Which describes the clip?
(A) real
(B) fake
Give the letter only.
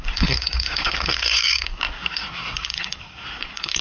B